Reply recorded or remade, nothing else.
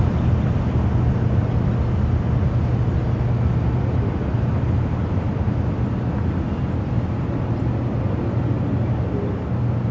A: recorded